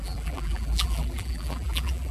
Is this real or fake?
fake